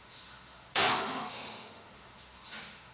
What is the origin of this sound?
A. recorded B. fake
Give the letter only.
B